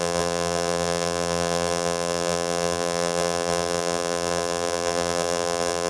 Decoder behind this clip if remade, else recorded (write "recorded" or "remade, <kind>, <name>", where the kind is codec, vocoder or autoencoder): remade, vocoder, BigVGAN v2